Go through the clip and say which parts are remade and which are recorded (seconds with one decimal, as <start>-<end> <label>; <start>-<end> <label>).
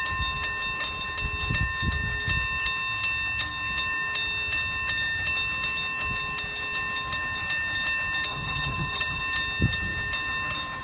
0.0-8.3 recorded; 8.3-9.2 remade; 9.2-10.8 recorded